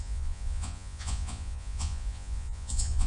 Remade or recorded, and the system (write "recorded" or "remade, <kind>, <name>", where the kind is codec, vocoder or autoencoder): remade, vocoder, Vocos